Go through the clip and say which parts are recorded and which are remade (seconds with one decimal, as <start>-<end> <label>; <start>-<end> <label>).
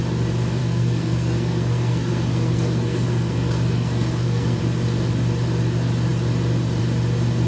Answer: 0.0-0.6 recorded; 0.6-4.6 remade; 4.6-7.5 recorded